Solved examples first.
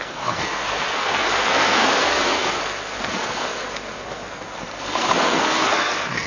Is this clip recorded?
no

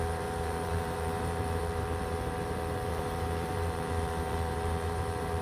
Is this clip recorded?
no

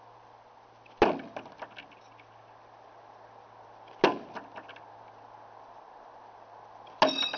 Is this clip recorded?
yes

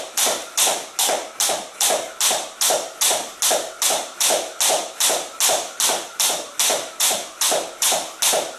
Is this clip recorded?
yes